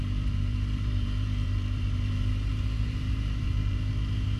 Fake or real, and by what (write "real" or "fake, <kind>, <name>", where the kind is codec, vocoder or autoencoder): fake, vocoder, BigVGAN v2